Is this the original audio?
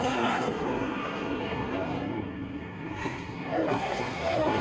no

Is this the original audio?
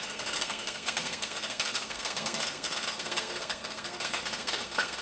no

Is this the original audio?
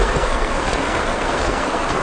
no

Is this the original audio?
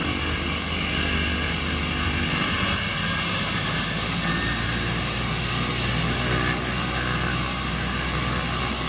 yes